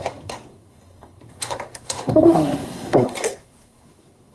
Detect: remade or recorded remade